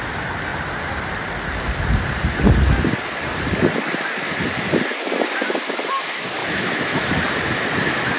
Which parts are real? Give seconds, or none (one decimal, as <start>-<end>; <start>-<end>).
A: 0.0-6.4; 7.1-8.2